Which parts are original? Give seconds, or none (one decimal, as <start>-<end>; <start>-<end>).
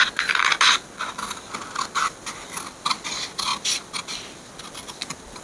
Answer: 0.0-5.4